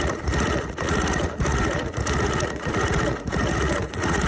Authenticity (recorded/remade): remade